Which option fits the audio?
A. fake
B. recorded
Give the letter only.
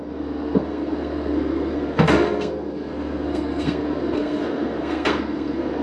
A